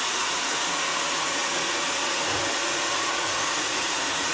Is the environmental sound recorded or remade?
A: remade